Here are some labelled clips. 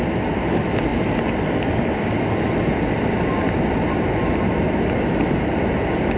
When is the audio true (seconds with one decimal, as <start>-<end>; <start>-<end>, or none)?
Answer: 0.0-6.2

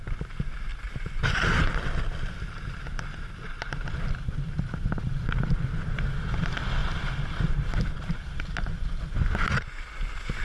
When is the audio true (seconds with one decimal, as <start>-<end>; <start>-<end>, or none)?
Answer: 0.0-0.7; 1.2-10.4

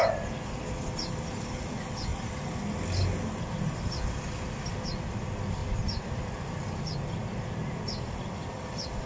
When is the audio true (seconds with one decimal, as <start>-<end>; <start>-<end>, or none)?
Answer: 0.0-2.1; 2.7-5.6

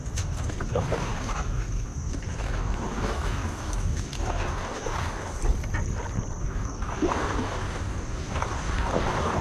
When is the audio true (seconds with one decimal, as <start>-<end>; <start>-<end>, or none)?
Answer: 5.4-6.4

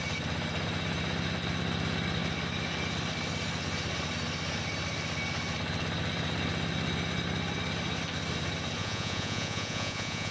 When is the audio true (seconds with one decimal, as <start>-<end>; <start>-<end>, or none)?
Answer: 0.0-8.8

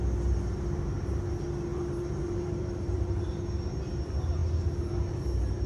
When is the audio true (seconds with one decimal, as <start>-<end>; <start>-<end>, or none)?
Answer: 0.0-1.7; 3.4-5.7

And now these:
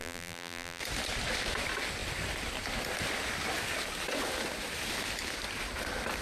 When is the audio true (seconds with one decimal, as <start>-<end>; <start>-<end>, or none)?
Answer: 0.8-6.2